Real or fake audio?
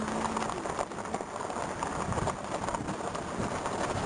real